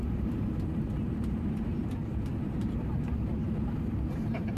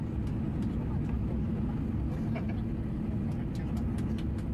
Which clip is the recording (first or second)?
second